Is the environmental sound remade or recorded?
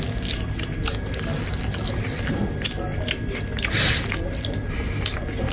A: recorded